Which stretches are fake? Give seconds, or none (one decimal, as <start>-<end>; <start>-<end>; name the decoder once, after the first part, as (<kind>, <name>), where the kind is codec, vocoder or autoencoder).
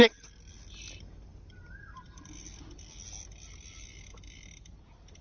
none